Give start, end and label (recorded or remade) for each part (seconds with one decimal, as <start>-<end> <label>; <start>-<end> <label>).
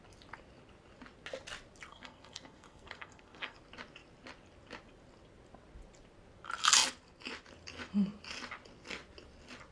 0.0-1.9 recorded; 1.9-3.6 remade; 3.6-9.7 recorded